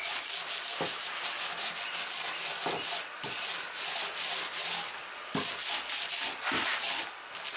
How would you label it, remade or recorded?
recorded